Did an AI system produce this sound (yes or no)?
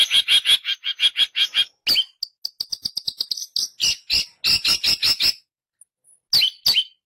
no